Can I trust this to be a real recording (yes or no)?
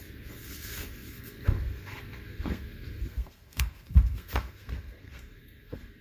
no